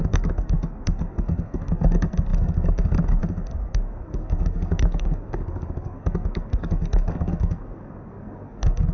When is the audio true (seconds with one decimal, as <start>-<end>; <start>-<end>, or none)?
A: none